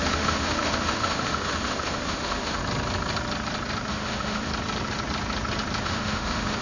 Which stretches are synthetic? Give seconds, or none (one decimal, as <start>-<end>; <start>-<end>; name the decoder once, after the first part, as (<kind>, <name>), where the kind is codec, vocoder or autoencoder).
0.0-2.6 (autoencoder, DAC-VAE); 3.9-4.5; 5.8-6.6